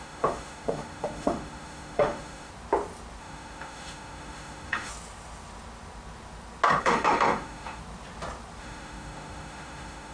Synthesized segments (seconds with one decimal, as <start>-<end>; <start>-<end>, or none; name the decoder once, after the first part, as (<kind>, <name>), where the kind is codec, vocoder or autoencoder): 0.0-2.5 (autoencoder, DAC-VAE); 3.2-4.9; 6.8-7.8; 8.6-10.1